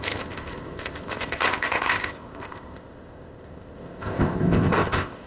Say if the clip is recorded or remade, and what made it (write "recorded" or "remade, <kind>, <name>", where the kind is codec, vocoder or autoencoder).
remade, codec, ZipCodec